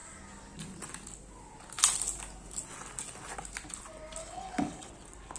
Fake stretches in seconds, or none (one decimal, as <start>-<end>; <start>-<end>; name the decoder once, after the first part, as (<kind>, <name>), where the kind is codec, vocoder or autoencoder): 4.2-4.9 (codec, HILCodec)